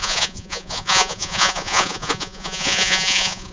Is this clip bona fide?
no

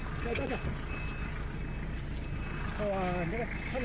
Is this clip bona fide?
yes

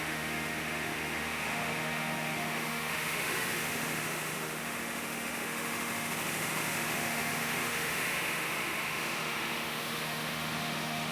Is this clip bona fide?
no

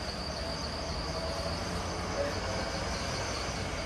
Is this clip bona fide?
yes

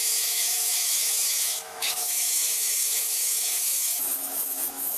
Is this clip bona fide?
no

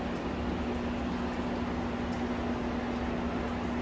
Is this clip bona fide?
yes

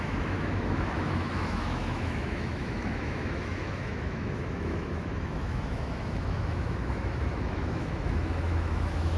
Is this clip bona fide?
no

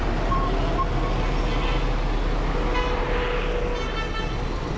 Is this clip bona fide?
yes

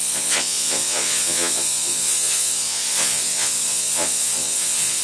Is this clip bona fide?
no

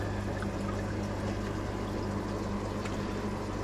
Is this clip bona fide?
yes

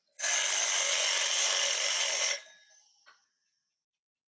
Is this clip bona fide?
yes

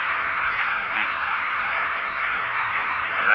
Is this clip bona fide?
no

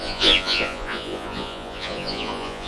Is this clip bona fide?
no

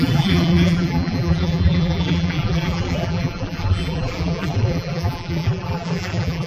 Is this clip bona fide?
no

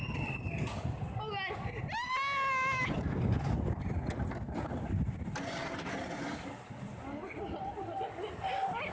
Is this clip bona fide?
yes